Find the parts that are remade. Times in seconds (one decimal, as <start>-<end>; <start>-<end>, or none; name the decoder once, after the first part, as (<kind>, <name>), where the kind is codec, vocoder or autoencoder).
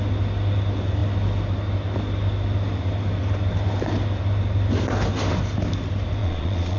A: 6.2-6.8 (vocoder, Vocos)